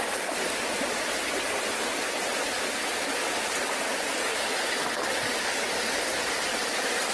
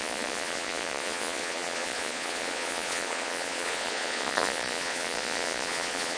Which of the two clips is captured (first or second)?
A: first